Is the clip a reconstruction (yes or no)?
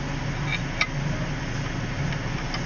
no